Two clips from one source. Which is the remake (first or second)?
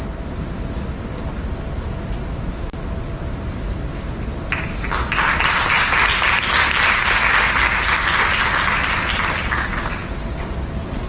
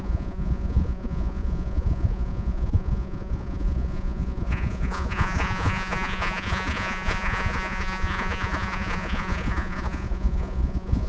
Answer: second